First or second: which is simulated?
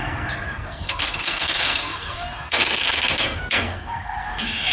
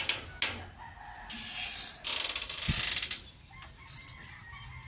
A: first